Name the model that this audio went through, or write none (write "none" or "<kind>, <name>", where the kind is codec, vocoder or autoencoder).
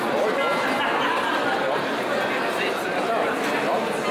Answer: none